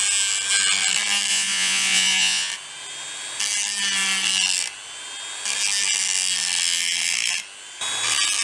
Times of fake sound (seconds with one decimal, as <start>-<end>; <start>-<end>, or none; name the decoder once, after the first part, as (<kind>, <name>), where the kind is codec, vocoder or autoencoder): 1.3-2.5 (vocoder, Vocos)